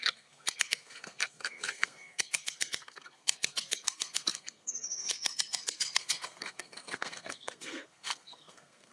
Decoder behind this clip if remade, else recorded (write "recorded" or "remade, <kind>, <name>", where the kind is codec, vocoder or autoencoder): remade, codec, SNAC